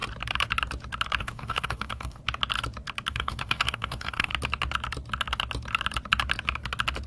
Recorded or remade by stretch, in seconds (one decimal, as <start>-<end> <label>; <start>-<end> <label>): 0.0-1.2 recorded; 1.2-2.2 remade; 2.2-3.1 recorded; 3.1-4.3 remade; 4.3-7.1 recorded